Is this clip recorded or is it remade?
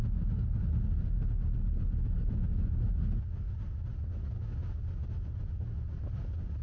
recorded